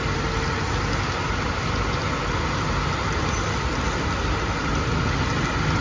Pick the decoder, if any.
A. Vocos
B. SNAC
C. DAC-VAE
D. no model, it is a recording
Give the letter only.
D